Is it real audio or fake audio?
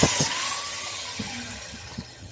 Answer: fake